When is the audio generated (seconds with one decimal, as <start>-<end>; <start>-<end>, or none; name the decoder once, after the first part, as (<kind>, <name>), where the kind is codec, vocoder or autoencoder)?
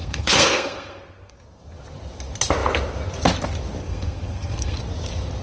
0.0-1.4 (codec, SNAC); 3.8-4.8